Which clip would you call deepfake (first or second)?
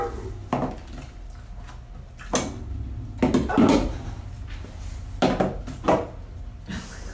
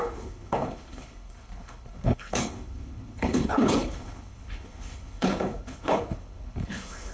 second